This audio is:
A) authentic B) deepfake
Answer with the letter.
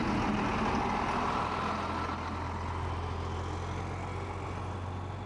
A